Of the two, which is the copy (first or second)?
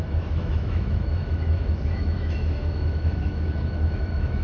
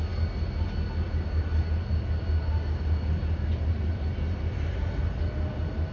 first